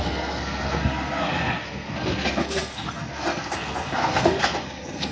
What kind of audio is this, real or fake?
fake